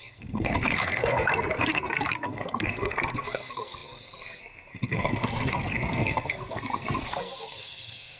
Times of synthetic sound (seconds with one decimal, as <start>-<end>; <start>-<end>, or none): 0.0-8.2